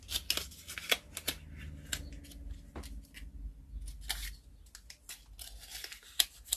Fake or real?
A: real